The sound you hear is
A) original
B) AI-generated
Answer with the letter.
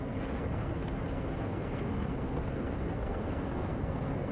B